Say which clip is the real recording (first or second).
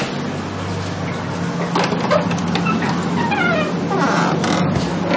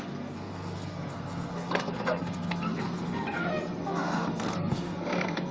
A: first